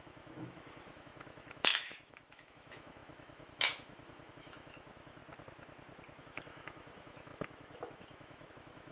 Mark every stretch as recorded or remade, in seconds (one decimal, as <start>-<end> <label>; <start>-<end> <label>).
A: 0.0-5.2 remade; 5.2-6.2 recorded; 6.2-8.9 remade